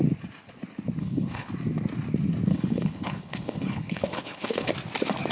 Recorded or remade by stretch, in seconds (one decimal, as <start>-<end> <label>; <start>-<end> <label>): 0.0-1.0 recorded; 1.0-1.5 remade; 1.5-2.5 recorded; 2.5-4.7 remade; 4.7-5.3 recorded